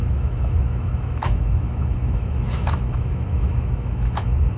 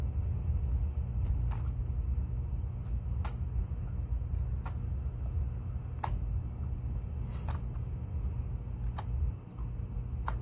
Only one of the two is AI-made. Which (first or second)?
first